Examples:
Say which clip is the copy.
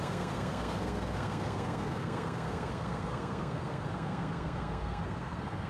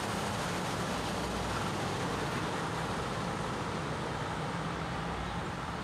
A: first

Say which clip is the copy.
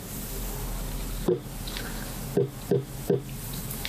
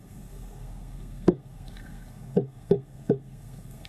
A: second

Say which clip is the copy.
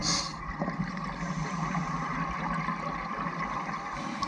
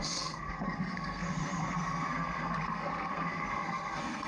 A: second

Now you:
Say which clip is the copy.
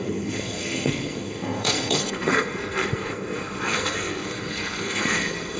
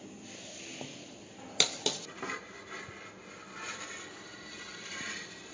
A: first